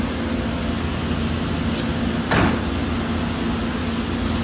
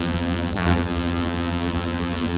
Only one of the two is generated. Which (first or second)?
second